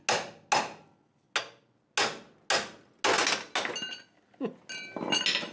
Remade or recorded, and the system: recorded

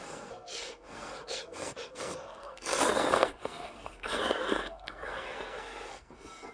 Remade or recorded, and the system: remade, codec, SNAC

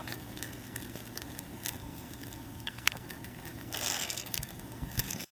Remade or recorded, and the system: remade, codec, SNAC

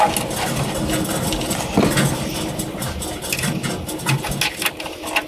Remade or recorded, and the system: recorded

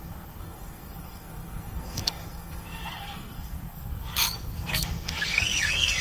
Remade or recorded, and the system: remade, codec, SNAC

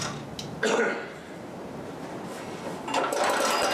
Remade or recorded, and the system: recorded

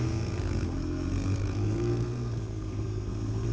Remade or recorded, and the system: remade, codec, SNAC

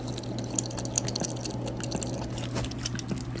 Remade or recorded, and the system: recorded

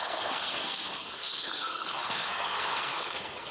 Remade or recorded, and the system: remade, codec, SNAC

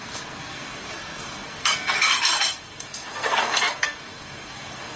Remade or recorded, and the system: remade, codec, SNAC